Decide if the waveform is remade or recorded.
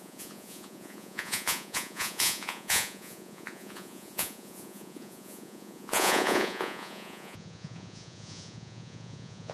remade